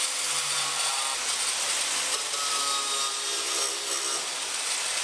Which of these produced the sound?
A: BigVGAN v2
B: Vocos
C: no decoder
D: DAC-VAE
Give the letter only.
C